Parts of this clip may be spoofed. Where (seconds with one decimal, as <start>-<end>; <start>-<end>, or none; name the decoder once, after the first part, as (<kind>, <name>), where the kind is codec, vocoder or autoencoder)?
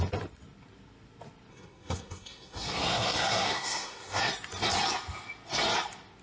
1.5-4.3 (codec, SNAC)